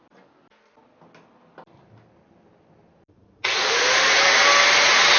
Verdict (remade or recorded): recorded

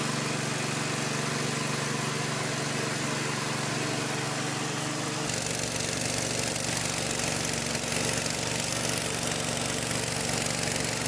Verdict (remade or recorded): recorded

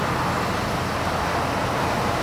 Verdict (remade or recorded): recorded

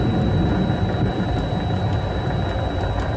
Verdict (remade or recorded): remade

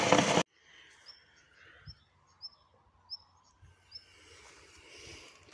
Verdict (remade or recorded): recorded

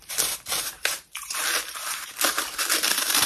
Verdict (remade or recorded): remade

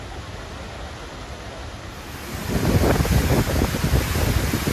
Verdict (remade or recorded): recorded